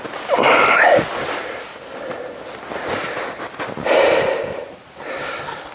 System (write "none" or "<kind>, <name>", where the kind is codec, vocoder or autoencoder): none